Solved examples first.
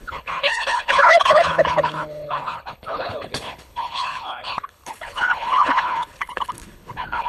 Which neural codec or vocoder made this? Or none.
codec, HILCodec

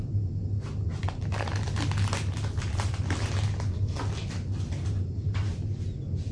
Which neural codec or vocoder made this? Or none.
none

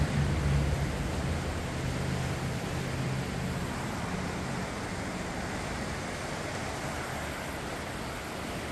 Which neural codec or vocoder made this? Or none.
none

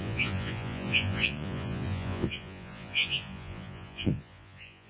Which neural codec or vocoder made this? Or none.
vocoder, Vocos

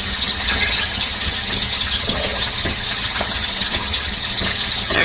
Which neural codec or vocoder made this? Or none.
vocoder, HiFi-GAN